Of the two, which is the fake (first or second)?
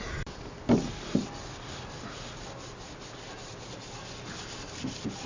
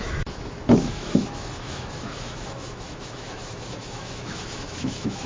second